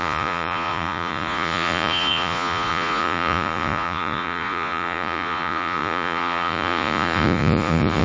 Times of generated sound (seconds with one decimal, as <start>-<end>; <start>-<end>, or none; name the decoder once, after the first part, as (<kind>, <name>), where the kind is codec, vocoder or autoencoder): 0.0-8.0 (vocoder, Vocos)